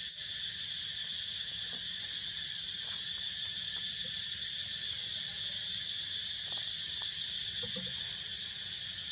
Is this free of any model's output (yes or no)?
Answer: yes